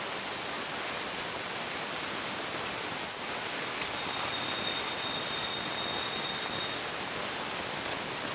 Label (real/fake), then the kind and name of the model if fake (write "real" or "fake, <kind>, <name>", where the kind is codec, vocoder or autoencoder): real